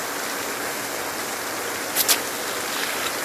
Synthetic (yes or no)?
no